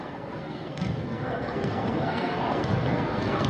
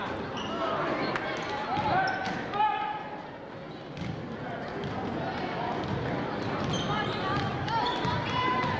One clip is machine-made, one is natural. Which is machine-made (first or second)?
first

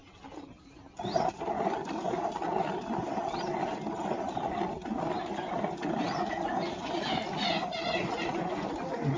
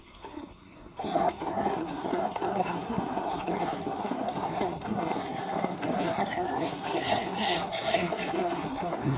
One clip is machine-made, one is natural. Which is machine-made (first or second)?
second